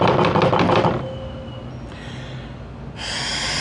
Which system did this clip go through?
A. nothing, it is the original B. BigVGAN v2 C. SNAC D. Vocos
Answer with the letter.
A